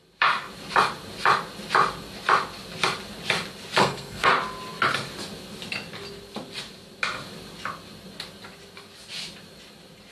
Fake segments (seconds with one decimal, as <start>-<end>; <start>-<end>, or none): 3.8-4.3